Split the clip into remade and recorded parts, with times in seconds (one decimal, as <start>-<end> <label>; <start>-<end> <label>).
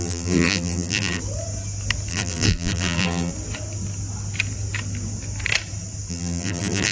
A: 0.0-1.2 remade; 1.2-2.1 recorded; 2.1-3.3 remade; 3.3-6.1 recorded; 6.1-6.9 remade